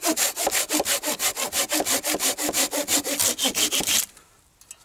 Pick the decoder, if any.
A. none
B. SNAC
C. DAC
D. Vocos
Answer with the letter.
A